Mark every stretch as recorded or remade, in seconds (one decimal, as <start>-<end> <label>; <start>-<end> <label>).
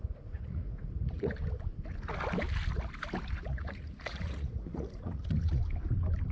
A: 0.0-1.3 remade; 1.3-3.4 recorded; 3.4-5.6 remade; 5.6-6.3 recorded